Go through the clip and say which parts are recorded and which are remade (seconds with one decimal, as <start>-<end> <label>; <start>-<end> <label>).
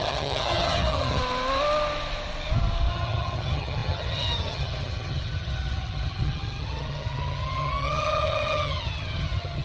0.0-1.2 remade; 1.2-2.9 recorded; 2.9-9.6 remade